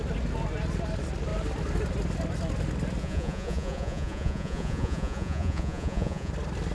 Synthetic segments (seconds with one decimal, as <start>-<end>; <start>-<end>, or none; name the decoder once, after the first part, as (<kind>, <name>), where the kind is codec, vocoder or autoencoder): 3.0-6.3 (vocoder, Vocos)